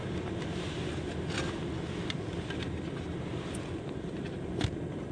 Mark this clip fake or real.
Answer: real